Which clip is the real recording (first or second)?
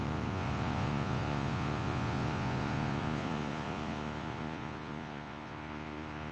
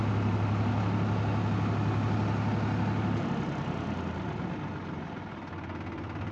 second